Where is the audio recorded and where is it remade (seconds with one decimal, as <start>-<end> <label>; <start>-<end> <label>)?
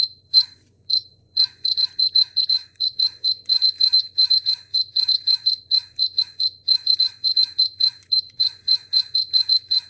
0.0-9.9 remade